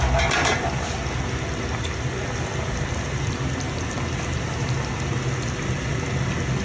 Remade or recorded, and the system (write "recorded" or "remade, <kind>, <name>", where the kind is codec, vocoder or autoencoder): recorded